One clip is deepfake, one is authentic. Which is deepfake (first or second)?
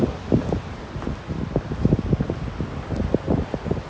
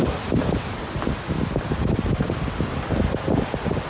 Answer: second